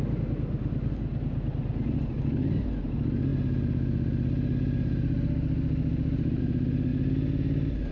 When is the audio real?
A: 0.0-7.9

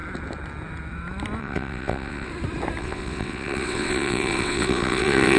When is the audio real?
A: 0.0-1.4; 2.3-2.8

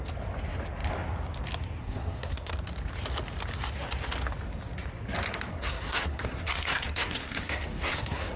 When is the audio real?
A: 0.0-1.8; 2.5-5.5